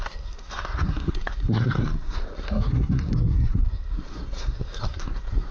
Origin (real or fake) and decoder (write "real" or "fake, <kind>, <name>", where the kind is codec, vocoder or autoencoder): fake, codec, SNAC